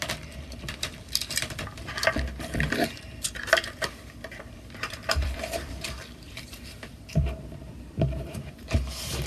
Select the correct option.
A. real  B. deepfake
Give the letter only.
B